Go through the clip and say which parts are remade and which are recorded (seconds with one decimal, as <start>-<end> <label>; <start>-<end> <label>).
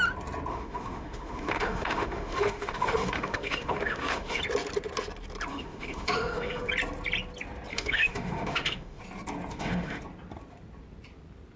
0.0-0.5 recorded; 0.5-4.4 remade; 4.4-5.5 recorded; 5.5-6.7 remade; 6.7-7.7 recorded; 7.7-9.0 remade; 9.0-9.5 recorded; 9.5-10.0 remade; 10.0-11.6 recorded